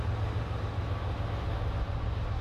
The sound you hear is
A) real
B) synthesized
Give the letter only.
A